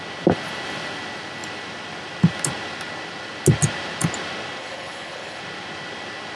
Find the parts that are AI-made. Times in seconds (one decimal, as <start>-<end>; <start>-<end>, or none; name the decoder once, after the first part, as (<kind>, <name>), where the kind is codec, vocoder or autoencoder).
4.6-5.4 (codec, HILCodec)